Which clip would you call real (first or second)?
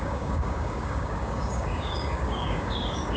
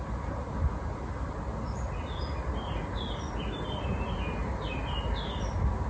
second